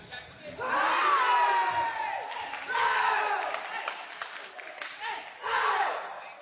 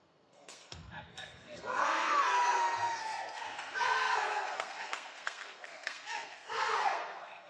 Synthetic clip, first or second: second